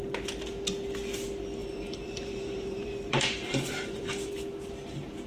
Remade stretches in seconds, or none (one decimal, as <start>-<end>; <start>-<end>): 1.6-4.3